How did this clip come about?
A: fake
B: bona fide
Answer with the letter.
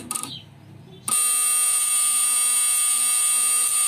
B